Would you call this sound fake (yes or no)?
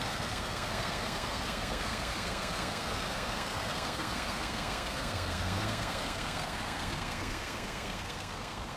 yes